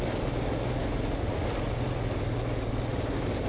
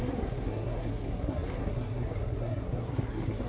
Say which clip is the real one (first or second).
first